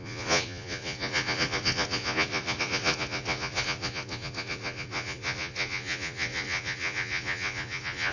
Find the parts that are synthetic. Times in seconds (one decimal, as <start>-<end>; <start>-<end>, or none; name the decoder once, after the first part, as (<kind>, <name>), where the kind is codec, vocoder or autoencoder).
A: 0.0-8.1 (vocoder, Vocos)